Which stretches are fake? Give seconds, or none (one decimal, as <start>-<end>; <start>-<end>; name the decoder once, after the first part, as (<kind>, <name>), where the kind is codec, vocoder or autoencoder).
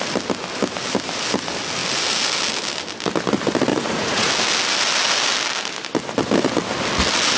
3.7-4.3 (vocoder, Vocos)